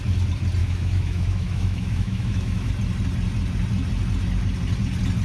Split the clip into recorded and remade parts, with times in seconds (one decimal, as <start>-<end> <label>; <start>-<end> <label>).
0.0-0.6 recorded; 0.6-2.7 remade; 2.7-5.2 recorded